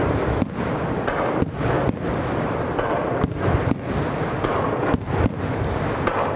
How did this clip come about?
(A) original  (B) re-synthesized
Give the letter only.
A